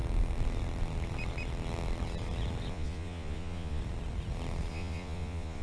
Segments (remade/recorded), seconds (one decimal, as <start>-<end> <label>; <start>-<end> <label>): 0.0-2.7 recorded; 2.7-3.8 remade; 3.8-4.7 recorded; 4.7-5.6 remade